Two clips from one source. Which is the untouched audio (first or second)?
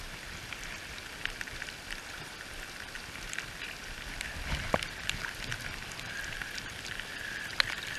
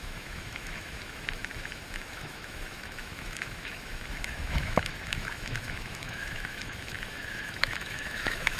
first